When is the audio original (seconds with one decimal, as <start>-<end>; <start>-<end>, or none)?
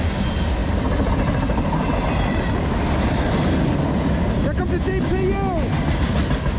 0.0-6.6